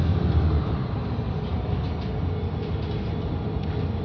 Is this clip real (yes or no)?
yes